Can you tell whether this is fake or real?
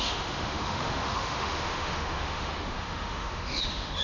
fake